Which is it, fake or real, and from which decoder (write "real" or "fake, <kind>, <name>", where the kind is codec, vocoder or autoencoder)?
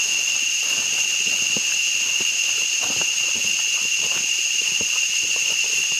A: real